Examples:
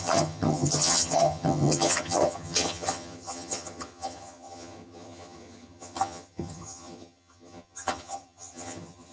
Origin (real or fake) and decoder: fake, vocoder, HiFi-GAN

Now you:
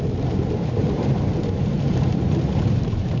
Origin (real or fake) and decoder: fake, vocoder, BigVGAN v2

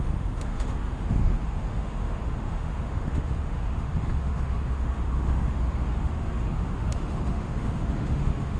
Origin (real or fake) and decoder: fake, autoencoder, DAC-VAE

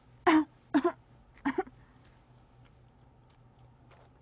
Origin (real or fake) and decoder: real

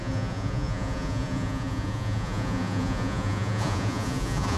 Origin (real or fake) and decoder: fake, vocoder, Vocos